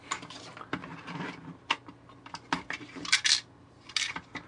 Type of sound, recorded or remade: recorded